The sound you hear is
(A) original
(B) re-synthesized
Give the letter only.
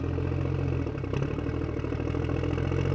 A